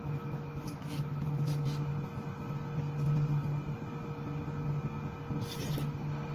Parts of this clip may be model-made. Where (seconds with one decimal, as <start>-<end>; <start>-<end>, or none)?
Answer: 0.0-1.9; 5.7-6.3

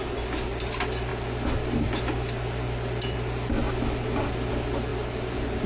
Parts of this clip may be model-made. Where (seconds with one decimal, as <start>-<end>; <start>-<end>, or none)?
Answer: none

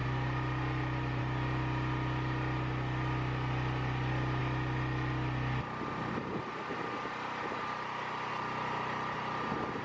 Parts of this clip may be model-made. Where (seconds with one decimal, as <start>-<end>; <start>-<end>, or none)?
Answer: none

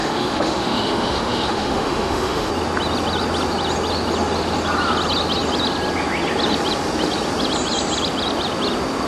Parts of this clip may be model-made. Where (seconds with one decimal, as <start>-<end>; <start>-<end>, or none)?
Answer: 0.0-2.5

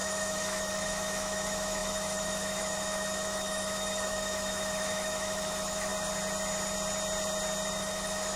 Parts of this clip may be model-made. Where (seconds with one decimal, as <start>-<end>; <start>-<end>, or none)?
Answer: 0.0-5.9; 7.8-8.4